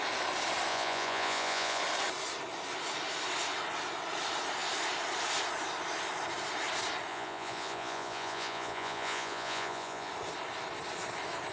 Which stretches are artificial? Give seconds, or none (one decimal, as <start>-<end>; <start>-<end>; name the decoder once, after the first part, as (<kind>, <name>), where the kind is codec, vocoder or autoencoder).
0.7-1.8 (vocoder, Vocos); 7.1-10.1